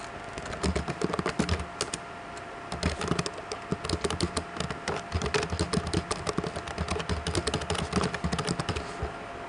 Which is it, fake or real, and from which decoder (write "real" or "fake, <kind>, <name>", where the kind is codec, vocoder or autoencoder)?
real